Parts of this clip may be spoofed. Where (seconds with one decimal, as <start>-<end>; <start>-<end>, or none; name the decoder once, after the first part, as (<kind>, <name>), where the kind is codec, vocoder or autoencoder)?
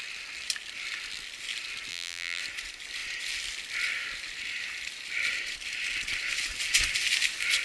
1.9-2.4 (vocoder, BigVGAN v2)